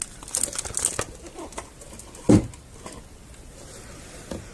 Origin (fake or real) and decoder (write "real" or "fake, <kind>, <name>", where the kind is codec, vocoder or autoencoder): real